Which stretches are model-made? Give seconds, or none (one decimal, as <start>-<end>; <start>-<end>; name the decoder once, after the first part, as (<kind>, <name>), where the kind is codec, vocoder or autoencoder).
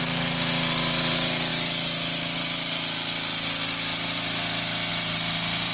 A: none